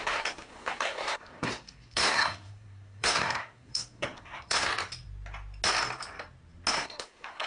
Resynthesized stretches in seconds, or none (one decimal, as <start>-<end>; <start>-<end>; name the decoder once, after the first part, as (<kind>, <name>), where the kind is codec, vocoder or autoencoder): 0.0-4.7 (codec, SNAC); 6.7-7.5